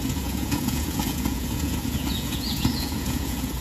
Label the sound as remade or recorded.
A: remade